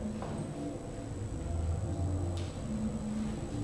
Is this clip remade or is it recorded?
recorded